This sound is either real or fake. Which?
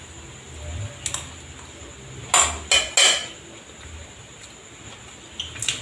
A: real